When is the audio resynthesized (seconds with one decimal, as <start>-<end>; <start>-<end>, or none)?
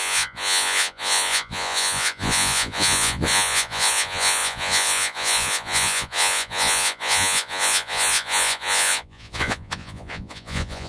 0.0-10.9